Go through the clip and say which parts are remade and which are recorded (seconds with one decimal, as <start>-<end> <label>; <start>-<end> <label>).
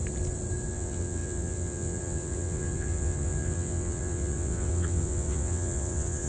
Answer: 0.0-0.7 recorded; 0.7-6.3 remade